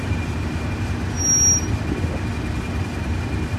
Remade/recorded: recorded